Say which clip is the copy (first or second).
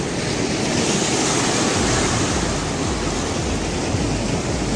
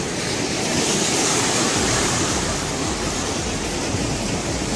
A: second